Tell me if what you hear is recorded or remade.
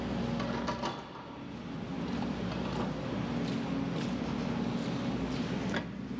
recorded